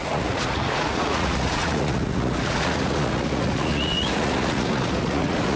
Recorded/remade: remade